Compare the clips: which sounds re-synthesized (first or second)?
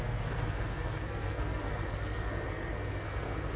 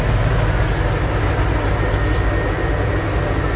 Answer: first